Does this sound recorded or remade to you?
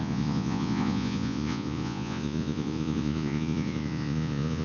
remade